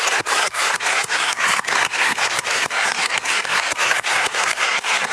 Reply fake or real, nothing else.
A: fake